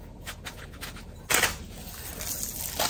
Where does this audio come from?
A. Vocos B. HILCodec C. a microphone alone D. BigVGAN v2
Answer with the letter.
C